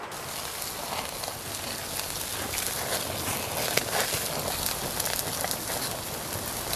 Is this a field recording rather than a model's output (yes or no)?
yes